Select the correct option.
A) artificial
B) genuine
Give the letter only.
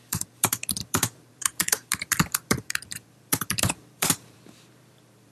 A